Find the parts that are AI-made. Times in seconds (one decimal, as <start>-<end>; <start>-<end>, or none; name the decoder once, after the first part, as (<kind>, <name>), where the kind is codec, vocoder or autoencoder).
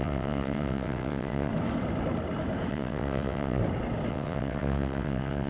0.0-1.5 (vocoder, WaveNeXt); 2.7-3.6; 4.1-5.5